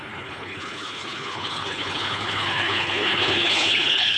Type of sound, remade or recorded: remade